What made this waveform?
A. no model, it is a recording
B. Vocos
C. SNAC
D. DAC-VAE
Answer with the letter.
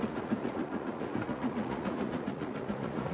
B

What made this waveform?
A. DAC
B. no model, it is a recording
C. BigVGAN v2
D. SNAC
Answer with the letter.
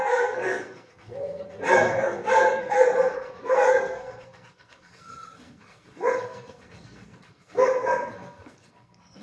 D